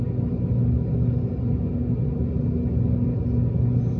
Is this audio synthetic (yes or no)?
no